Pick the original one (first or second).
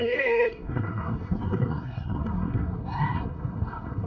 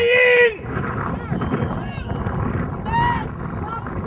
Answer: second